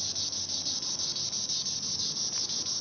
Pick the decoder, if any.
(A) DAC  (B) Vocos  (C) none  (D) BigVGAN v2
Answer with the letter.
C